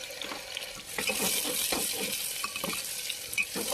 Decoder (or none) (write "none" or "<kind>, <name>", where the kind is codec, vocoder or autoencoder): none